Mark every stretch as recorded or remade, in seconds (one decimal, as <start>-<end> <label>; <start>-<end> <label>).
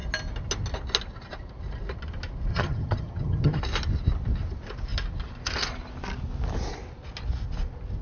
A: 0.0-2.5 recorded; 2.5-3.6 remade; 3.6-8.0 recorded